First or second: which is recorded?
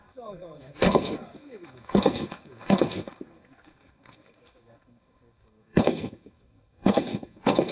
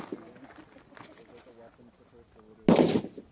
second